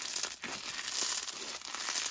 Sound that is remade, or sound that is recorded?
recorded